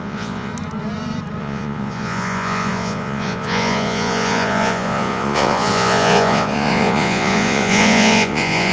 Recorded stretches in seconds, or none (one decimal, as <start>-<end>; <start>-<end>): 0.5-1.4